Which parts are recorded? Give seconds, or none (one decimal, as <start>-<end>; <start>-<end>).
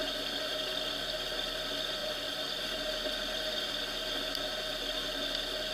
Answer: 0.0-0.5; 1.0-2.0; 3.7-5.7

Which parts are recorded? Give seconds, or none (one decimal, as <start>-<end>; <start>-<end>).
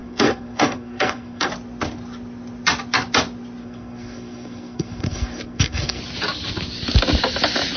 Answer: 1.5-3.6; 6.0-7.8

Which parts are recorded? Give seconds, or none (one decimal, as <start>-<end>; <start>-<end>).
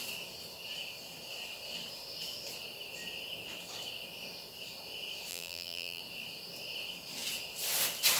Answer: 0.0-5.3; 6.0-8.2